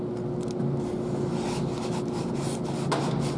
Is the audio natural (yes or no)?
yes